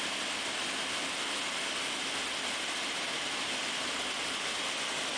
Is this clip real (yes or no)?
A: yes